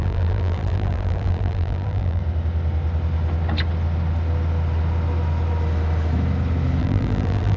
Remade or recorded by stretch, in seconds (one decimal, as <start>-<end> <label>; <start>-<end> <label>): 0.0-2.2 remade; 2.2-6.8 recorded; 6.8-7.6 remade

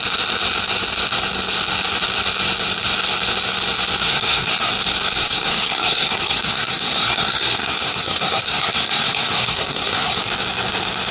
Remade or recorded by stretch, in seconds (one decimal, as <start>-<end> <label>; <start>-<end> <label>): 0.0-4.0 recorded; 4.0-4.7 remade; 4.7-5.2 recorded; 5.2-10.2 remade; 10.2-11.1 recorded

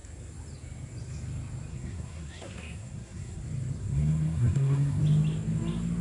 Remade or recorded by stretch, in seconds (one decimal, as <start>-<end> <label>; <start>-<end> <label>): 0.0-1.7 recorded; 1.7-3.4 remade; 3.4-3.8 recorded; 3.8-5.0 remade; 5.0-6.0 recorded

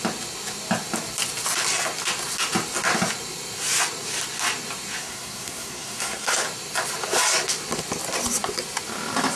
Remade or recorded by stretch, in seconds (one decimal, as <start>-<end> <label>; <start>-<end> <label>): 0.0-5.0 recorded; 5.0-6.3 remade; 6.3-9.4 recorded

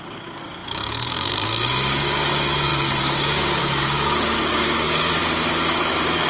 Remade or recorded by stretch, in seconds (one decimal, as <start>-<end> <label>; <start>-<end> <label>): 0.0-6.3 remade

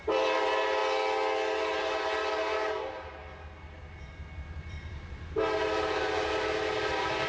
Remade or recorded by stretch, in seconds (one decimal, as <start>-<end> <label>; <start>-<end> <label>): 0.0-0.8 remade; 0.8-1.6 recorded; 1.6-3.2 remade; 3.2-4.6 recorded; 4.6-7.3 remade

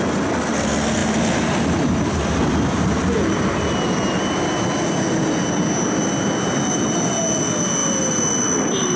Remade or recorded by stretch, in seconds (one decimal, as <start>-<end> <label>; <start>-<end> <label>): 0.0-9.0 recorded